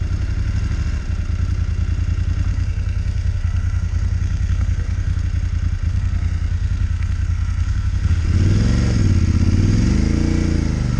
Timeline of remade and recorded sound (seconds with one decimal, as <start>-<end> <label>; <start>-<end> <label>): 0.0-2.5 recorded; 2.5-5.2 remade; 5.2-5.9 recorded; 5.9-8.2 remade; 8.2-11.0 recorded